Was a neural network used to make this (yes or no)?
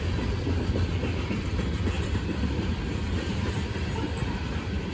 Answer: no